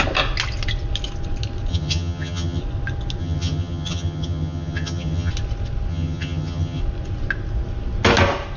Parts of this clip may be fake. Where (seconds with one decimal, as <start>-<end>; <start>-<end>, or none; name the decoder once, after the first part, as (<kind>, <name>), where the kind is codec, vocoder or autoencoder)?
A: 1.7-2.6 (vocoder, HiFi-GAN); 3.2-5.3; 5.9-6.8